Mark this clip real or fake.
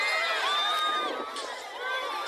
real